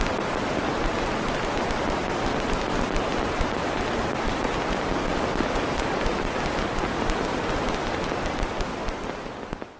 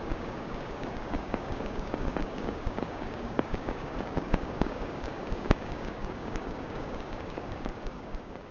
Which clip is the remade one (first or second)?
second